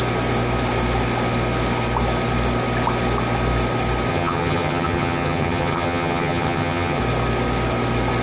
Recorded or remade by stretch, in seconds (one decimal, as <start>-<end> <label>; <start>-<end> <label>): 0.0-4.1 recorded; 4.1-7.0 remade; 7.0-8.2 recorded